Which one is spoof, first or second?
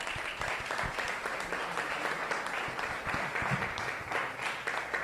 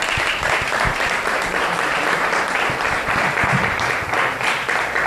second